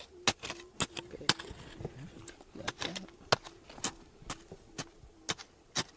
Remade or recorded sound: recorded